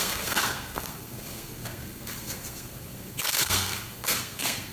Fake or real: fake